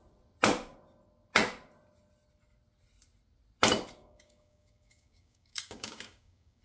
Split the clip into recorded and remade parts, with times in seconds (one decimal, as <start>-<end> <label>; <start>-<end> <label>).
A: 0.0-4.0 recorded; 4.0-6.6 remade